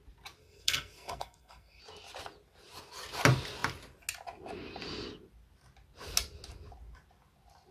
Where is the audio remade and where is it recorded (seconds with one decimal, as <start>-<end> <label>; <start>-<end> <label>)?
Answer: 0.0-0.4 recorded; 0.4-1.8 remade; 1.8-7.7 recorded